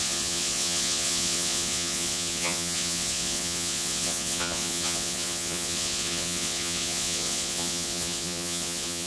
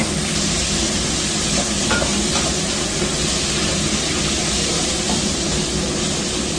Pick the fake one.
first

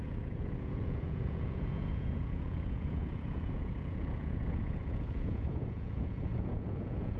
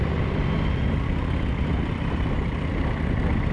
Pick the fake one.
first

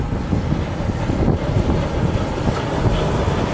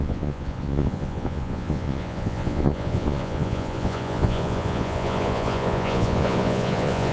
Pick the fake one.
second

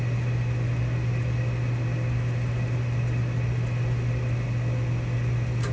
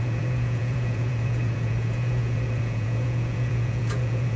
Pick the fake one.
second